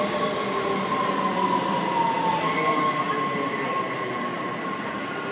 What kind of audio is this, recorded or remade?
recorded